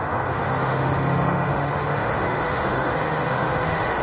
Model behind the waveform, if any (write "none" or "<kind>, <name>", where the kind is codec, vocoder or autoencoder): autoencoder, DAC-VAE